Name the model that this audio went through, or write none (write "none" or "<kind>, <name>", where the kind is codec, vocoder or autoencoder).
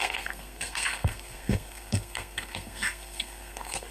codec, SNAC